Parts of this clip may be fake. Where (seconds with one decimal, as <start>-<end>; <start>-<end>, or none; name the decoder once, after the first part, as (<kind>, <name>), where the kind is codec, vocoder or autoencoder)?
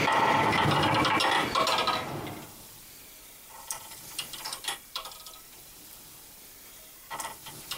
1.8-6.1 (vocoder, BigVGAN v2)